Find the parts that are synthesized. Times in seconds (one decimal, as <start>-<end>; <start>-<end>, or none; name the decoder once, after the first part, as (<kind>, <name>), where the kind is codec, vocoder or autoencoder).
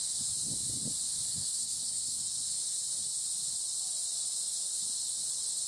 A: 1.3-2.2 (codec, SNAC)